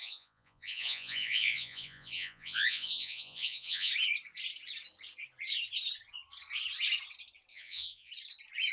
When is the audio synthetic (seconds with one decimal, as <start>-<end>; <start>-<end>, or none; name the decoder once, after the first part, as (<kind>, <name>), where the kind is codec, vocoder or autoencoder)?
0.0-3.9 (vocoder, Vocos); 7.5-8.1